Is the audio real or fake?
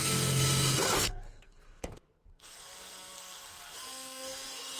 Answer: fake